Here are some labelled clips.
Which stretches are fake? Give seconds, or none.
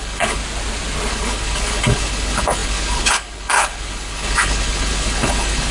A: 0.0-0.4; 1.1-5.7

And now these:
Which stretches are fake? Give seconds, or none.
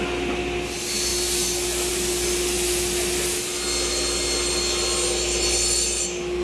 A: none